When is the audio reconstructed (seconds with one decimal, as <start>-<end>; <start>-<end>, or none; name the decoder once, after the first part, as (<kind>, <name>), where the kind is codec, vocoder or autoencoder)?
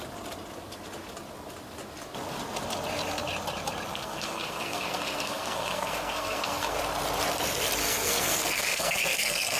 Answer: 3.9-6.8 (codec, SNAC); 7.8-9.6